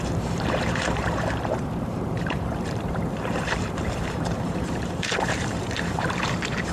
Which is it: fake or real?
fake